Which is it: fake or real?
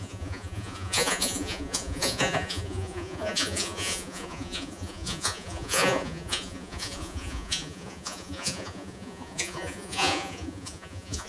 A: fake